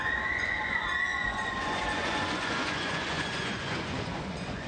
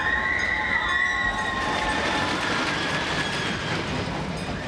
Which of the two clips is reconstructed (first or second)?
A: first